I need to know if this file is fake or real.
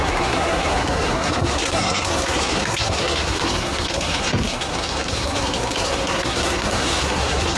fake